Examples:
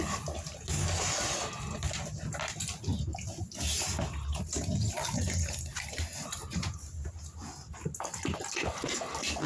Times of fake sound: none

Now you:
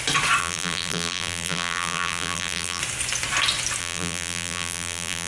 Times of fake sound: 0.4-2.8 (vocoder, BigVGAN v2); 3.8-5.3